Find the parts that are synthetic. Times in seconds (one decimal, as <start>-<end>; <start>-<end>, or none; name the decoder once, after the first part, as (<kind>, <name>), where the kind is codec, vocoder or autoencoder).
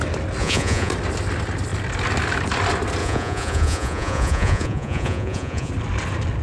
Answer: 0.4-0.9 (vocoder, Vocos); 3.0-5.7